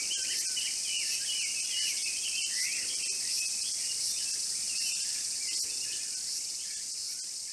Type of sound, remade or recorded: recorded